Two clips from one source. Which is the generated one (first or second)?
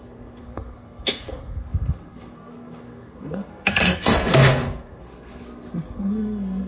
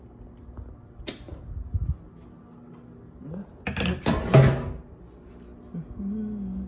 first